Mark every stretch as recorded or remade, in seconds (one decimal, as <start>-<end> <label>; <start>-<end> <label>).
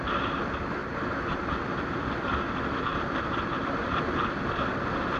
0.0-5.2 recorded